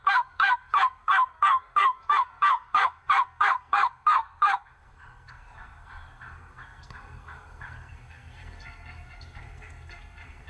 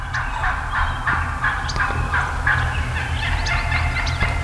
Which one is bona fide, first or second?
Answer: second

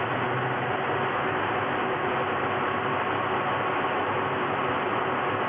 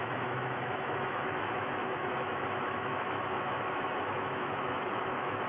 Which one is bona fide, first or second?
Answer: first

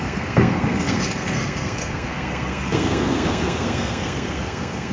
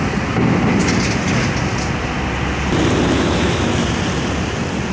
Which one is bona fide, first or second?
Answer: second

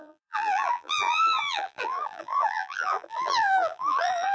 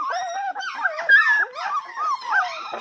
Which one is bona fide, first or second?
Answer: second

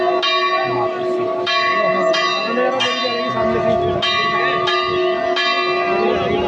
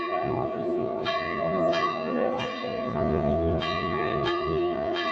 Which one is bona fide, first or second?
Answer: first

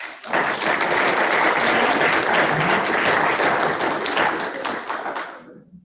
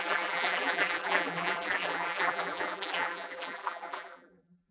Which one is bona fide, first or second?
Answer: first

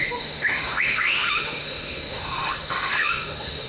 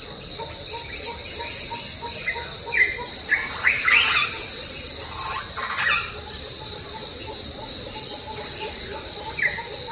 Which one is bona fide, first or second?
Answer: second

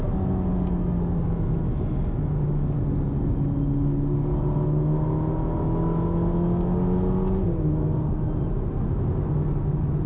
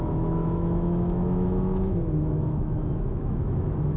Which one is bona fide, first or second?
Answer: first